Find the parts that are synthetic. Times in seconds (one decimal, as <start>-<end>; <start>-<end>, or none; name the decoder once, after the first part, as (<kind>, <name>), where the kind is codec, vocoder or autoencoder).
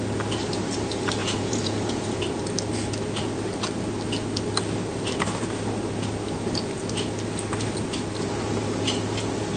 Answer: 1.2-2.2 (vocoder, Vocos)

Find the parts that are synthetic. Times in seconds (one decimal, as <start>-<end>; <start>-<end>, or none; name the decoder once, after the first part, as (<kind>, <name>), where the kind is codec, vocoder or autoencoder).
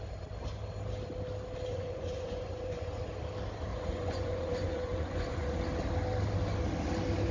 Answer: 1.7-3.0 (vocoder, Vocos); 3.7-5.6